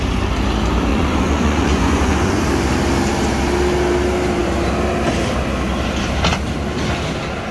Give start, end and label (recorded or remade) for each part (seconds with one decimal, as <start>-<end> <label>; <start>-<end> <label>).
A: 0.0-0.9 recorded; 0.9-2.4 remade; 2.4-7.5 recorded